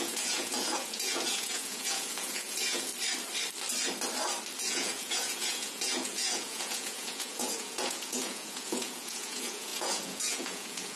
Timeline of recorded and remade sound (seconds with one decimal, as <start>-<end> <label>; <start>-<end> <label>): 0.0-2.9 remade; 2.9-4.6 recorded; 4.6-11.0 remade